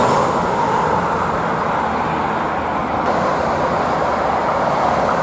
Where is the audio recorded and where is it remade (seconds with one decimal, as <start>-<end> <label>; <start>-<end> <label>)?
0.0-2.8 recorded; 2.8-4.5 remade; 4.5-5.2 recorded